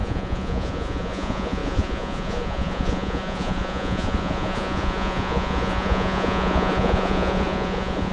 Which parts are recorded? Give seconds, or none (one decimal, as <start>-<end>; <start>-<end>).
none

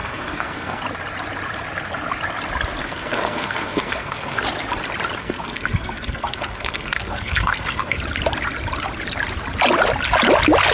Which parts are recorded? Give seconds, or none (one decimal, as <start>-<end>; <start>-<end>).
0.8-2.8; 4.4-5.2; 8.0-10.7

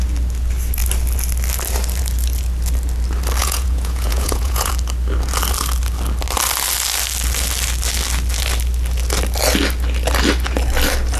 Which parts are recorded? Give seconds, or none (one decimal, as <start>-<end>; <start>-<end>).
0.0-3.4; 4.7-11.2